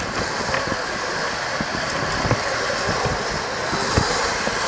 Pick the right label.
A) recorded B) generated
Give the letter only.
A